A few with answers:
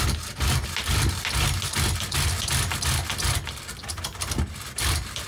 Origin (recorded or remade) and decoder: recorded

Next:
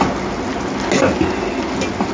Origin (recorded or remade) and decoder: recorded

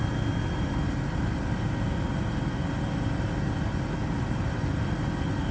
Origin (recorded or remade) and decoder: recorded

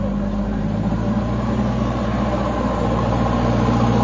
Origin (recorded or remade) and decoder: recorded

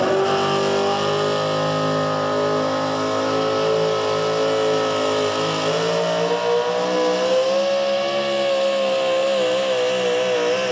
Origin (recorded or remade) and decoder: recorded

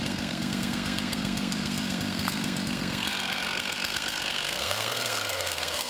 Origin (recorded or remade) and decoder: remade, codec, SNAC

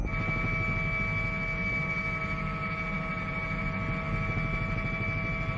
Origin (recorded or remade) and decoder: recorded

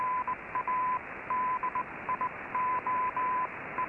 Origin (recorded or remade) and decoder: recorded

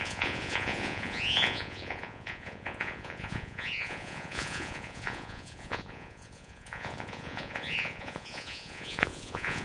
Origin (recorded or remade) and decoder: remade, vocoder, Vocos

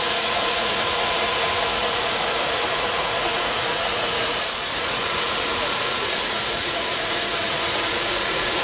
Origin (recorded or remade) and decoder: remade, vocoder, Vocos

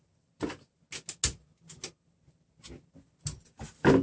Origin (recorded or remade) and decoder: recorded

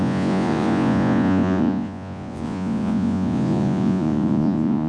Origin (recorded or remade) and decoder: remade, vocoder, Vocos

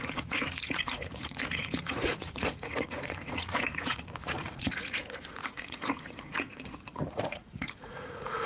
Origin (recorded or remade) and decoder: remade, vocoder, Vocos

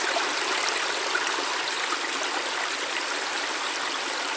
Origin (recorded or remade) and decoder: recorded